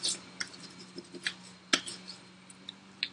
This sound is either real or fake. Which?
real